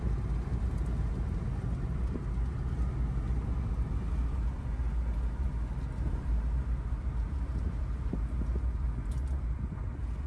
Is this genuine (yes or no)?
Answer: yes